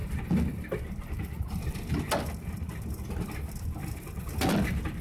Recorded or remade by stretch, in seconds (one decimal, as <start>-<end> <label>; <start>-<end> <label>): 0.0-1.9 remade; 1.9-3.8 recorded; 3.8-4.6 remade; 4.6-5.0 recorded